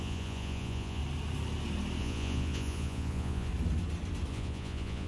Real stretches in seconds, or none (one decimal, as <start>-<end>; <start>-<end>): 1.0-2.0; 3.5-4.3